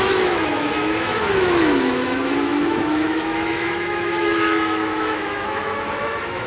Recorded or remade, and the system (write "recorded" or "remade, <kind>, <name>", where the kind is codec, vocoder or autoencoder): remade, autoencoder, DAC-VAE